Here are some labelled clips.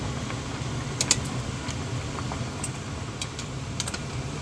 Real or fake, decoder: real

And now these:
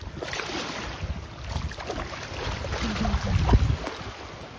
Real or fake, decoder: real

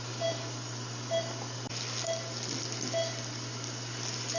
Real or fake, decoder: real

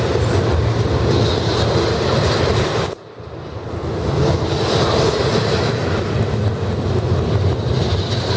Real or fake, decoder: real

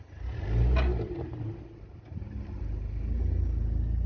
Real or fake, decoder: real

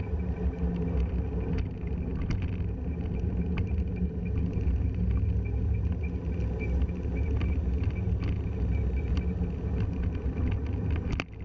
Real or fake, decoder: real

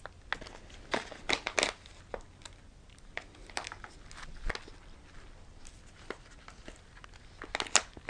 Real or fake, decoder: real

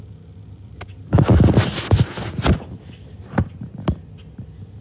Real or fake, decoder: real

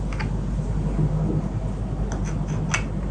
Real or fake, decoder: real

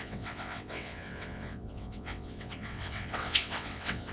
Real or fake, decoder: fake, vocoder, WaveNeXt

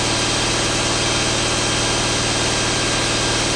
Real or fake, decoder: real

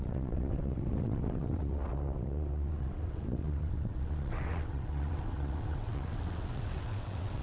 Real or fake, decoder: fake, vocoder, WaveNeXt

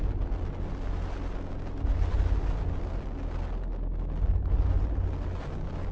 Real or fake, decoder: real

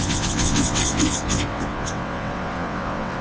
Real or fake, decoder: fake, vocoder, WaveNeXt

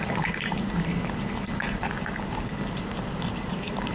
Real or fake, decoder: real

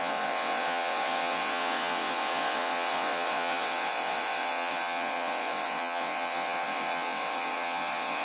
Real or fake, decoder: fake, vocoder, WaveNeXt